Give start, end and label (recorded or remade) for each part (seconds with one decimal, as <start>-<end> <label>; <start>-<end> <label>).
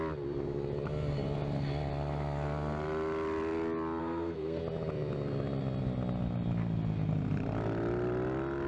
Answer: 0.0-4.0 recorded; 4.0-4.6 remade; 4.6-8.7 recorded